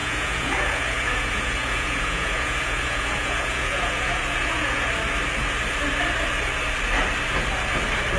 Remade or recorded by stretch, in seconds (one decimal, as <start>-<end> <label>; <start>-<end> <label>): 0.0-4.9 remade; 4.9-8.2 recorded